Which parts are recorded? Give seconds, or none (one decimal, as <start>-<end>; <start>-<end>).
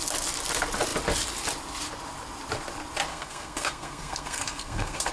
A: 0.0-3.1